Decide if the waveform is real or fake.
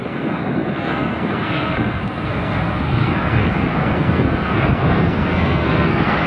fake